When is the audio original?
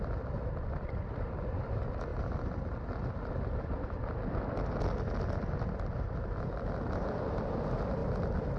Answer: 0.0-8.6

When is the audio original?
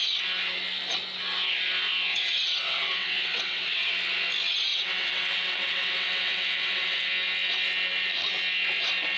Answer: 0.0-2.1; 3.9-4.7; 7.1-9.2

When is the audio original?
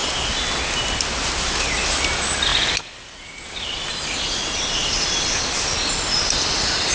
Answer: 0.0-6.9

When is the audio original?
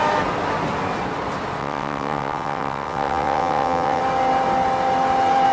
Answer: 0.0-1.6; 4.0-5.5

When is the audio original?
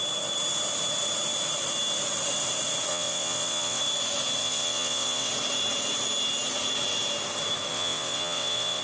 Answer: 0.0-2.9; 3.8-4.4; 5.3-7.7